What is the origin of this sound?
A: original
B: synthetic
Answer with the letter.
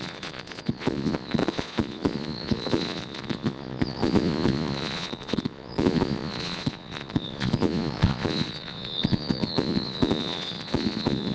B